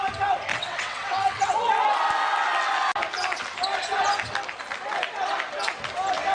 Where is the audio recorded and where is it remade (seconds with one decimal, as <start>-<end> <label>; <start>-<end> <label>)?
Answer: 0.0-0.5 recorded; 0.5-1.7 remade; 1.7-6.3 recorded